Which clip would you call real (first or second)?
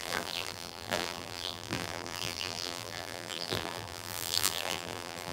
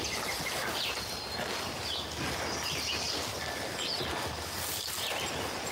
second